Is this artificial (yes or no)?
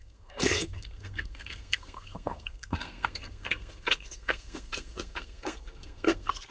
yes